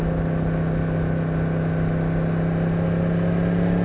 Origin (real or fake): real